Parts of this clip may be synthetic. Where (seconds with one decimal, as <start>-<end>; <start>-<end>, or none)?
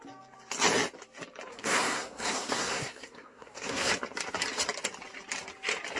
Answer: 1.5-3.9